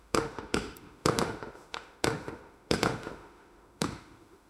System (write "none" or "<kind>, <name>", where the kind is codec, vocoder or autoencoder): autoencoder, DAC-VAE